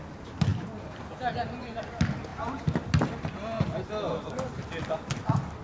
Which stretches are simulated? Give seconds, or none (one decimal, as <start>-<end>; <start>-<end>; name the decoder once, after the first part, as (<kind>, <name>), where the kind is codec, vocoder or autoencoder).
none